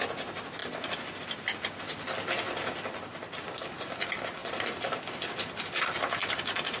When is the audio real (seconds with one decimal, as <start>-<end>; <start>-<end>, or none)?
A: 0.0-4.4; 5.3-6.2